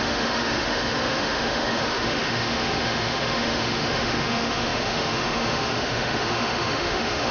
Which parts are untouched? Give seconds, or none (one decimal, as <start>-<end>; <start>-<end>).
none

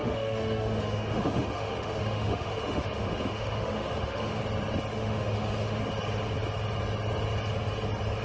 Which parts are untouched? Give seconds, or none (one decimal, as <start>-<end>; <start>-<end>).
4.4-4.9; 5.8-8.2